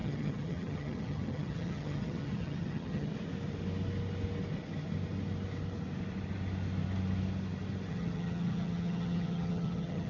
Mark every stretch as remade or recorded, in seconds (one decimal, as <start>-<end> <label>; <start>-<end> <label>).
0.0-3.1 remade; 3.1-7.9 recorded; 7.9-10.1 remade

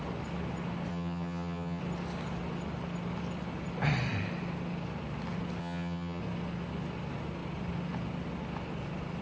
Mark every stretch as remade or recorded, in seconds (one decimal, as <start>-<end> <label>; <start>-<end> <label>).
0.0-0.9 recorded; 0.9-1.8 remade; 1.8-5.6 recorded; 5.6-6.2 remade; 6.2-9.2 recorded

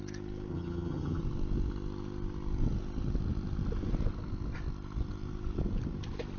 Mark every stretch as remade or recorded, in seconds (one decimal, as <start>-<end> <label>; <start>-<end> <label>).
0.0-0.5 recorded; 0.5-1.2 remade; 1.2-6.4 recorded

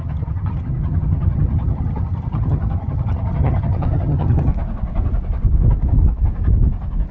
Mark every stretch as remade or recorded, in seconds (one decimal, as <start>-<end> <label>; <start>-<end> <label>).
0.0-4.5 remade; 4.5-7.1 recorded

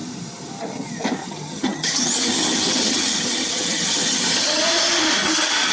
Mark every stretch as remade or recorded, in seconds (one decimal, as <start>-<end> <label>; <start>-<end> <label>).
0.0-1.2 recorded; 1.2-4.6 remade; 4.6-5.2 recorded; 5.2-5.7 remade

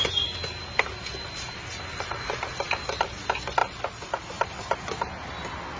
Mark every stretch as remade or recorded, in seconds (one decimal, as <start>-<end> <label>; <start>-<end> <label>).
0.0-5.8 recorded

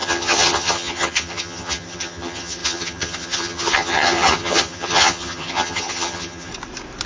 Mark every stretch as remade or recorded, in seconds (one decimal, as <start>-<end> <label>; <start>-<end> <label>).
0.0-6.5 remade; 6.5-7.1 recorded

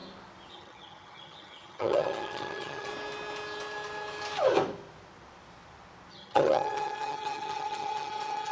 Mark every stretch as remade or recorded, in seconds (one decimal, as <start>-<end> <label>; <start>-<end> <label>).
0.0-0.5 recorded; 0.5-2.9 remade; 2.9-6.1 recorded; 6.1-8.5 remade